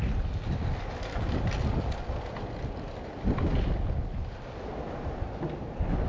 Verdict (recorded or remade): recorded